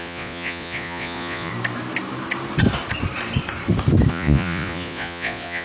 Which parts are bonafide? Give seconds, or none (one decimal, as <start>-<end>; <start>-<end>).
1.5-4.1